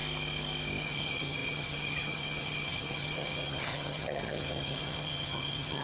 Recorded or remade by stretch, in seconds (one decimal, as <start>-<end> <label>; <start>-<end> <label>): 0.0-0.8 recorded; 0.8-5.8 remade

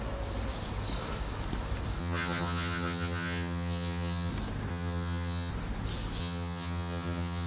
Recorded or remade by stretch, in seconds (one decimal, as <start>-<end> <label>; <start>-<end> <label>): 0.0-2.0 recorded; 2.0-4.3 remade; 4.3-4.7 recorded; 4.7-5.5 remade; 5.5-6.2 recorded; 6.2-7.5 remade

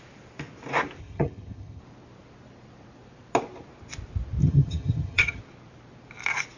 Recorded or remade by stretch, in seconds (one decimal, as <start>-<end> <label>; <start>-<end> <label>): 0.0-1.0 recorded; 1.0-1.8 remade; 1.8-4.4 recorded; 4.4-5.4 remade; 5.4-6.6 recorded

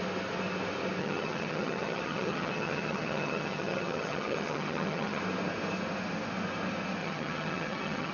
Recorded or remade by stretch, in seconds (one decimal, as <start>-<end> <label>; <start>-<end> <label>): 0.0-1.0 recorded; 1.0-5.2 remade; 5.2-7.0 recorded; 7.0-8.1 remade

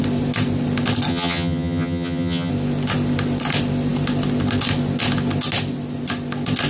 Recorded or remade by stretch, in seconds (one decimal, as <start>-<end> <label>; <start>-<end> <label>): 0.0-1.1 recorded; 1.1-2.5 remade; 2.5-6.7 recorded